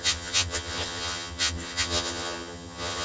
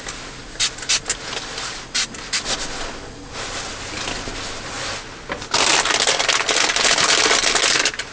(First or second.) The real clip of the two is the second